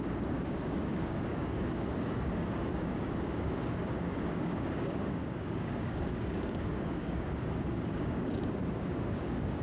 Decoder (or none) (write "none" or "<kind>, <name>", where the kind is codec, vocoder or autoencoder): codec, DAC